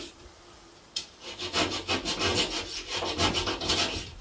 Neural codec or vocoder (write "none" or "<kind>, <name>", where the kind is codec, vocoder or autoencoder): vocoder, BigVGAN v2